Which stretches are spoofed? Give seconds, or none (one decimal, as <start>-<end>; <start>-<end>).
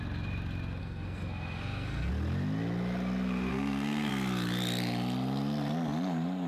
0.8-2.1; 3.5-4.1